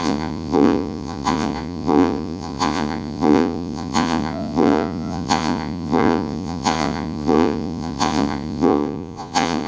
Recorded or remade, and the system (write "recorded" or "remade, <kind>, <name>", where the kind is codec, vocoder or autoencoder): remade, vocoder, Vocos